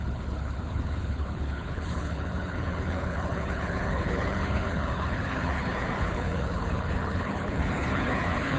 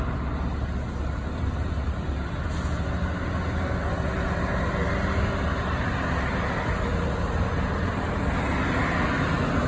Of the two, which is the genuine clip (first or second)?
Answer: second